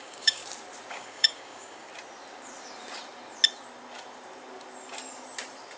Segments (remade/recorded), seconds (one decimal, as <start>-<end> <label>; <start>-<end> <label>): 0.0-0.4 remade; 0.4-0.9 recorded; 0.9-1.9 remade; 1.9-5.8 recorded